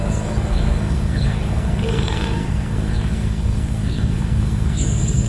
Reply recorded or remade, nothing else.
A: remade